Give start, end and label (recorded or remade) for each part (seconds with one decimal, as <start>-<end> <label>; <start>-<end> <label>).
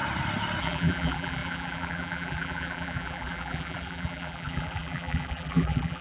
0.0-0.6 recorded; 0.6-6.0 remade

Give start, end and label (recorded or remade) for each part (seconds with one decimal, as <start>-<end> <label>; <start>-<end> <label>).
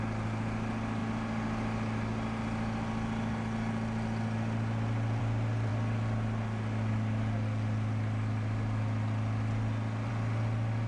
0.0-10.9 recorded